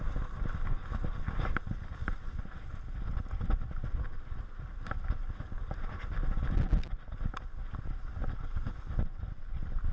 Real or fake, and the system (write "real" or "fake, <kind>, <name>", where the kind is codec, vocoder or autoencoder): real